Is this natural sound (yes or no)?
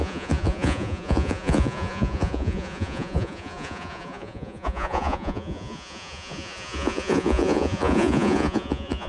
no